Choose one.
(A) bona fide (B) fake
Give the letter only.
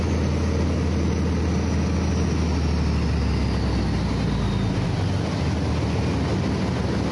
A